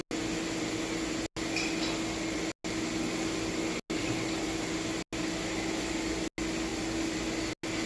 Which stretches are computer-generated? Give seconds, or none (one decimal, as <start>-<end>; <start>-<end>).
none